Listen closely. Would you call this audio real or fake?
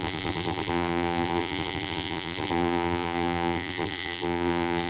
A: fake